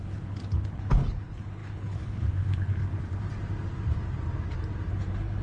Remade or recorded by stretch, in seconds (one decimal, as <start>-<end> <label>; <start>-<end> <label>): 0.0-2.8 remade; 2.8-4.9 recorded; 4.9-5.4 remade